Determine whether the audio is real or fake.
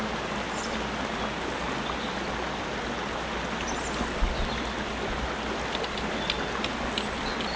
real